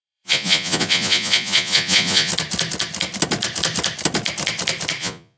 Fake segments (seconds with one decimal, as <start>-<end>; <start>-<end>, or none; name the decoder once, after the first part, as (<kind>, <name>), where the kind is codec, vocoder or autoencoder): 0.0-2.3 (vocoder, Vocos); 5.0-5.4